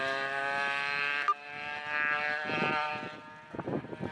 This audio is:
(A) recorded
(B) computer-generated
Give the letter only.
A